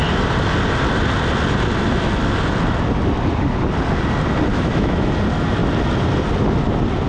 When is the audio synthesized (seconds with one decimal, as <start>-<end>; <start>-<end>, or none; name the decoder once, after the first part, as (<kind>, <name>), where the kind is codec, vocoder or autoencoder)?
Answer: 4.5-5.1 (autoencoder, DAC-VAE)